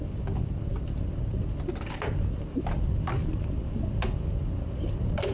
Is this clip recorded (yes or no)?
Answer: yes